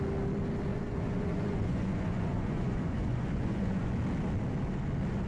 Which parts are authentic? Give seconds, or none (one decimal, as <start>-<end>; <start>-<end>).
0.0-0.7; 3.9-5.3